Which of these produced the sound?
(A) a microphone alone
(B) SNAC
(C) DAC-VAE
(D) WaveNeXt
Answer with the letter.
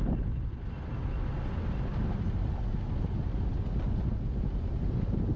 A